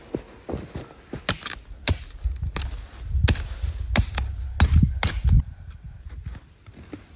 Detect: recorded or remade recorded